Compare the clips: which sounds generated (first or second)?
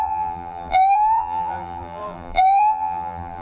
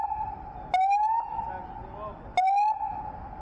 first